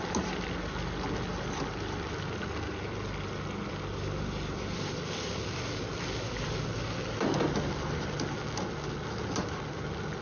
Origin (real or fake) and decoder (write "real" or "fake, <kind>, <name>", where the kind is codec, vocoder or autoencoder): real